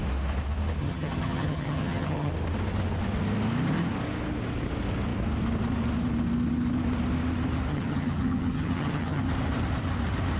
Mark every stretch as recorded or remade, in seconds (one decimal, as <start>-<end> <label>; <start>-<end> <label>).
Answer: 0.0-0.8 recorded; 0.8-2.3 remade; 2.3-7.7 recorded; 7.7-9.2 remade; 9.2-10.4 recorded

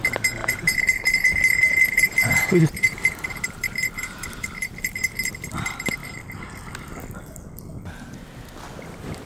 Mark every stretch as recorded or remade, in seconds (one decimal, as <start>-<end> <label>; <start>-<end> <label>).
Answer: 0.0-0.4 recorded; 0.4-5.3 remade; 5.3-9.3 recorded

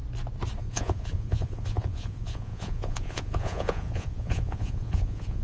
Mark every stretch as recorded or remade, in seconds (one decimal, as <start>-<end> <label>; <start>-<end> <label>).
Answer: 0.0-0.6 recorded; 0.6-5.4 remade

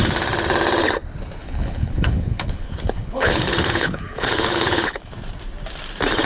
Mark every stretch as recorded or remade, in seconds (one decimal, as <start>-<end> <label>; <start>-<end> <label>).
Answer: 0.0-1.4 recorded; 1.4-5.1 remade; 5.1-6.2 recorded

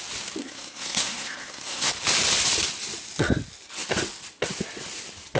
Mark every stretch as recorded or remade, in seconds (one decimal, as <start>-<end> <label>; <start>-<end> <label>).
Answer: 0.0-0.4 recorded; 0.4-1.9 remade; 1.9-5.4 recorded

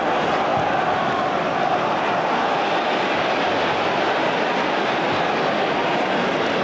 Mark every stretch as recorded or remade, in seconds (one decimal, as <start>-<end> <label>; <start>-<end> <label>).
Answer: 0.0-6.6 recorded

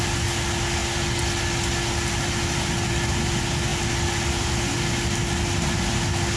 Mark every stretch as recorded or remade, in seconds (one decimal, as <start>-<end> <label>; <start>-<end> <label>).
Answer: 0.0-6.4 recorded